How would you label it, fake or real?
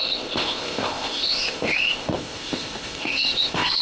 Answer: fake